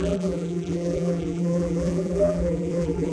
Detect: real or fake fake